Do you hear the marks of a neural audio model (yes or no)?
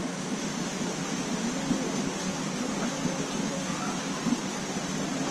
no